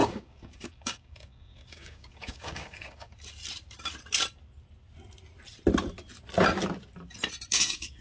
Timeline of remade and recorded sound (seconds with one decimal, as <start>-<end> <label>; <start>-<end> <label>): 0.0-3.1 remade; 3.1-7.5 recorded; 7.5-8.0 remade